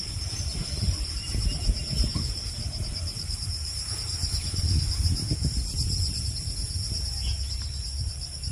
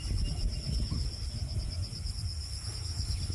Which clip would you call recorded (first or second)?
second